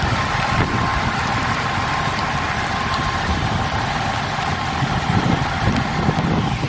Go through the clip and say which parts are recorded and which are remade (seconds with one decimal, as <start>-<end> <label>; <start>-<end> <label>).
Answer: 0.0-6.7 recorded